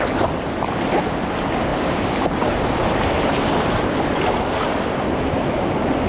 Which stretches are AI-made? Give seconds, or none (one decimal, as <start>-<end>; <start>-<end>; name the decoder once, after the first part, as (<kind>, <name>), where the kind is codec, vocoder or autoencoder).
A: 1.7-3.9 (vocoder, BigVGAN v2)